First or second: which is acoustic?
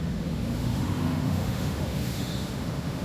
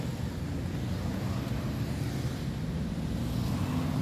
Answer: second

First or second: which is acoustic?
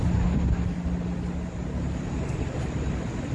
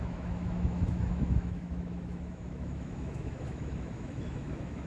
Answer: first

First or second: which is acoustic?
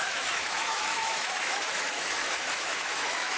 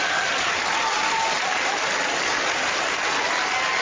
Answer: second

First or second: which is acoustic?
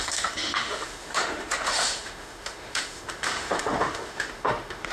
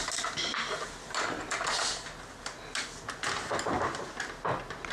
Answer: second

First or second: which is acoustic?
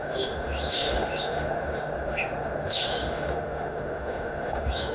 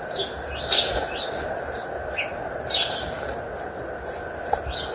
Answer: second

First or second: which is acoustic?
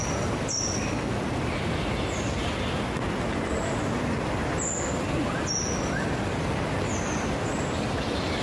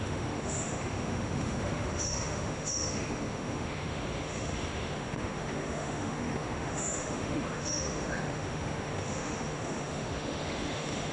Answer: first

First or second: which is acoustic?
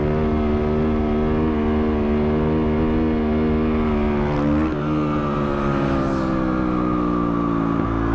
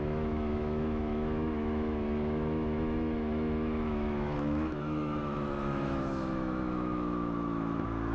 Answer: first